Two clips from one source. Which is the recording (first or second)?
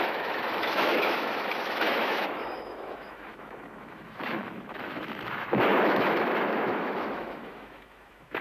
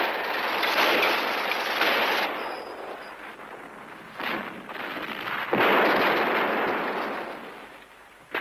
second